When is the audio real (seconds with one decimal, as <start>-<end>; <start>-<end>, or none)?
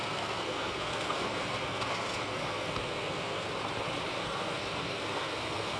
3.5-4.1